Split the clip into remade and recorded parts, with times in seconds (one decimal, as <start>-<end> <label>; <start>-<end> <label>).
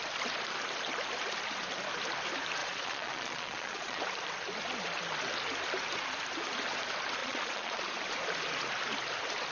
0.0-2.6 recorded; 2.6-4.0 remade; 4.0-7.2 recorded; 7.2-7.8 remade; 7.8-9.5 recorded